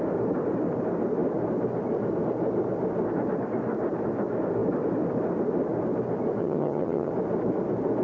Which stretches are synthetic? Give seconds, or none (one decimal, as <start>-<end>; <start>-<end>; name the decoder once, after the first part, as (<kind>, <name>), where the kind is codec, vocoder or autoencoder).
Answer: 6.4-7.1 (vocoder, HiFi-GAN)